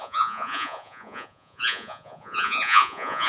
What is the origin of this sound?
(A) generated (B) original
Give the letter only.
A